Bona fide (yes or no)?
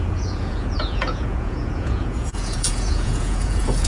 no